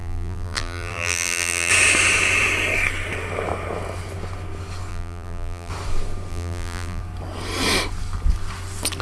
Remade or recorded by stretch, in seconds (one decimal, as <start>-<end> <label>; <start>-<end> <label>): 0.0-1.7 remade; 1.7-4.9 recorded; 4.9-5.7 remade; 5.7-6.3 recorded; 6.3-7.0 remade; 7.0-9.0 recorded